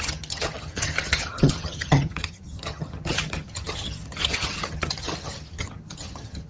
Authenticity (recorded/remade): remade